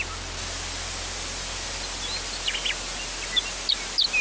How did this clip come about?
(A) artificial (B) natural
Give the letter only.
B